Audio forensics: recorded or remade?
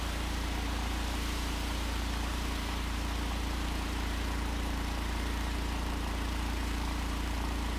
remade